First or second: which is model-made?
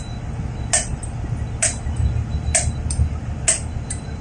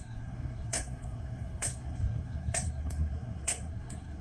second